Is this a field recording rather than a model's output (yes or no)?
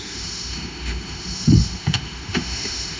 no